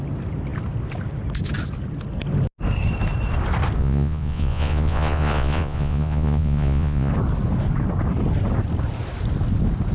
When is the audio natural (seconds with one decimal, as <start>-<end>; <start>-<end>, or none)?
0.0-3.8; 7.1-9.9